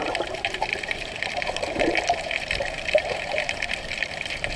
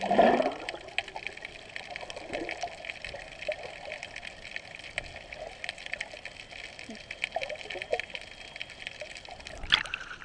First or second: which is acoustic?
second